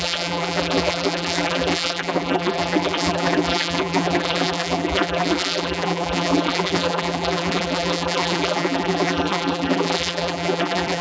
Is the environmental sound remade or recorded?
remade